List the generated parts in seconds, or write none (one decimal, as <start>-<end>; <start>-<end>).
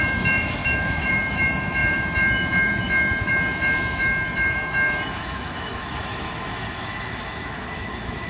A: 0.0-8.3